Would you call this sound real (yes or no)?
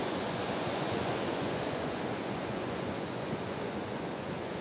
no